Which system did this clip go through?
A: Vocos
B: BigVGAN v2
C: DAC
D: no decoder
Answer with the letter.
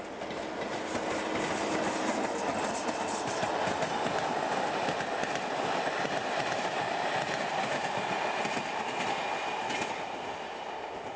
D